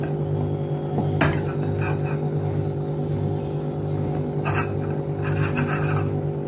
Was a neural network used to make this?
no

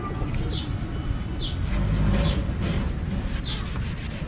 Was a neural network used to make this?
no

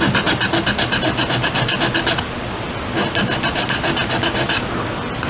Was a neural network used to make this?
no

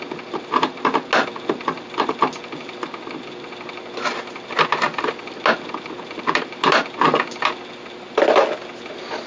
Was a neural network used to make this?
no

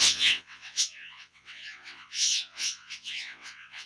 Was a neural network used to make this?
yes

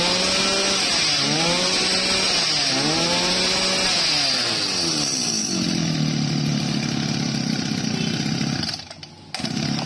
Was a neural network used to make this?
no